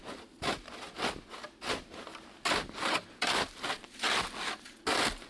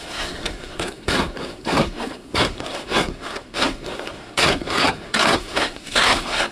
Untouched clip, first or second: first